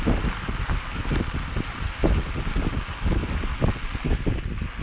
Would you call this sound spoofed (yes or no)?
no